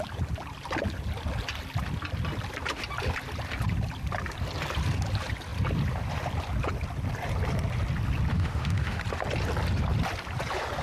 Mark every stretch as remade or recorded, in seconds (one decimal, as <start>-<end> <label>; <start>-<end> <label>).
0.0-8.3 recorded; 8.3-9.0 remade; 9.0-10.8 recorded